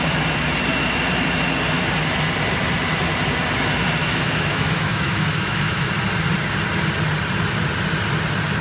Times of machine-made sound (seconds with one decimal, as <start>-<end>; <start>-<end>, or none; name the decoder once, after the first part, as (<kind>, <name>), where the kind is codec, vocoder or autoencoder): 4.0-5.9 (autoencoder, DAC-VAE)